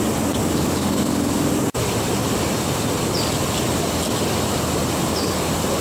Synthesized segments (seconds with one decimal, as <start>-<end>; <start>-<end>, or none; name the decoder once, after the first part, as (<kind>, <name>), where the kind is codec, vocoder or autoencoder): 0.4-1.5 (codec, DAC)